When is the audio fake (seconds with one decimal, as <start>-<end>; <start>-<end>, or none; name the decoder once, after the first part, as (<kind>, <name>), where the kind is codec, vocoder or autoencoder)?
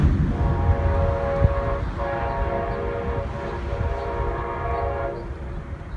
none